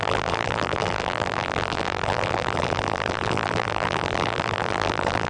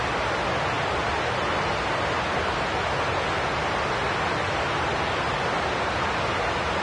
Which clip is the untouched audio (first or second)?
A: second